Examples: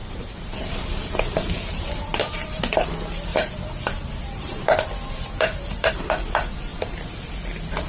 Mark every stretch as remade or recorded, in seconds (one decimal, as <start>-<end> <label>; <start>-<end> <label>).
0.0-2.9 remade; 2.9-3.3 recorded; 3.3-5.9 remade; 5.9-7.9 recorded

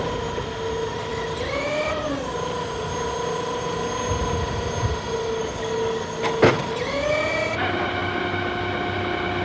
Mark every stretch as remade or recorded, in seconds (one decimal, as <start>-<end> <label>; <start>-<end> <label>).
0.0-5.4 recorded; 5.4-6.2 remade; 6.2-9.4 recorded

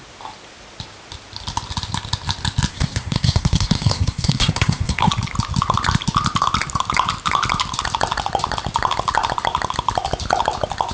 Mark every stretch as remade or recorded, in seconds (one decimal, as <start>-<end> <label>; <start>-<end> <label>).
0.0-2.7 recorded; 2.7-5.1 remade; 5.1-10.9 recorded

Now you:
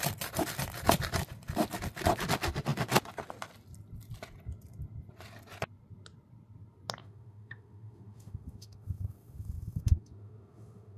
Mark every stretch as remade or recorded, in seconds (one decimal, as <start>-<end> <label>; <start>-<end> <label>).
0.0-7.0 recorded; 7.0-11.0 remade

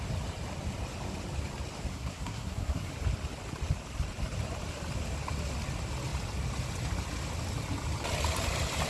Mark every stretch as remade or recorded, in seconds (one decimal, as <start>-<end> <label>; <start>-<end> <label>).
0.0-1.9 recorded; 1.9-2.9 remade; 2.9-8.9 recorded